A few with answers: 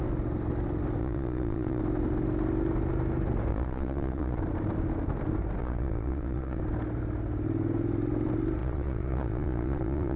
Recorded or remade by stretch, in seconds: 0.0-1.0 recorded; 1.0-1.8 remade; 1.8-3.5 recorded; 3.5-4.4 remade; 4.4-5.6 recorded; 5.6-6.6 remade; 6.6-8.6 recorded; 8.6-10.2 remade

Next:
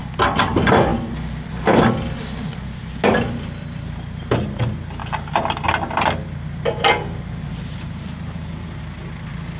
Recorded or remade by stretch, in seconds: 0.0-9.6 recorded

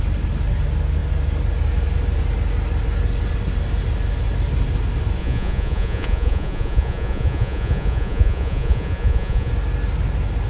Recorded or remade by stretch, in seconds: 0.0-5.2 recorded; 5.2-9.5 remade; 9.5-10.5 recorded

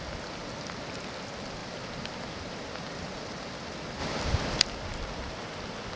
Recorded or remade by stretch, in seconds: 0.0-6.0 recorded

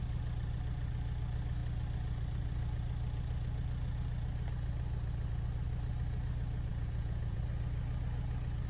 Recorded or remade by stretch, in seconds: 0.0-6.7 recorded; 6.7-7.4 remade; 7.4-8.7 recorded

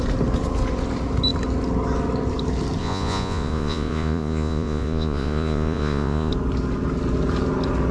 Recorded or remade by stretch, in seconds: 0.0-2.8 recorded; 2.8-6.3 remade; 6.3-7.9 recorded

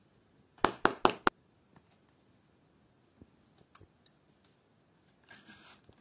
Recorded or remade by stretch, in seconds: 0.0-6.0 recorded

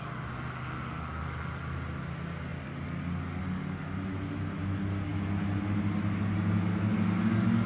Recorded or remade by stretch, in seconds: 0.0-7.7 recorded